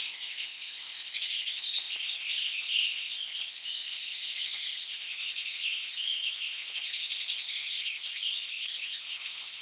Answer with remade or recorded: remade